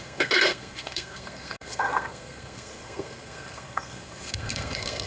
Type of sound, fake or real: fake